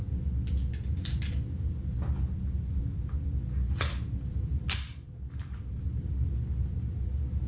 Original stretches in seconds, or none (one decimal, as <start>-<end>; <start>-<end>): 0.0-7.5